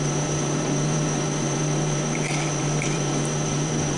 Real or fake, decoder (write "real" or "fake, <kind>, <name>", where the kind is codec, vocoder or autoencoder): fake, vocoder, BigVGAN v2